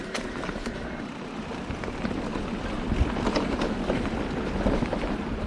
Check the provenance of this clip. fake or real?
real